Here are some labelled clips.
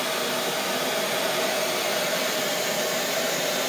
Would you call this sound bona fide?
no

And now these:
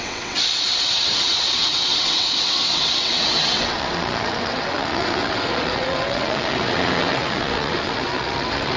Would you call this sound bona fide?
no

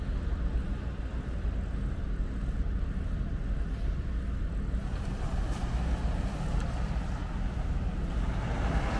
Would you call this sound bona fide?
yes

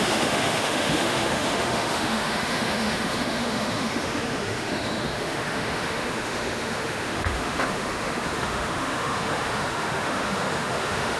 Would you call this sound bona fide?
no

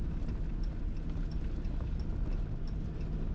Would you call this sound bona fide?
yes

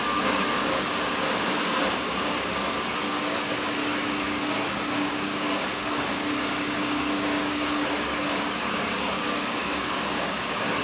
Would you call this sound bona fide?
no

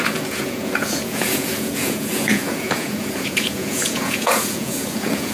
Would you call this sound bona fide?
no